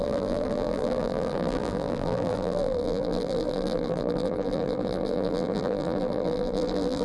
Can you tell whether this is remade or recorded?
remade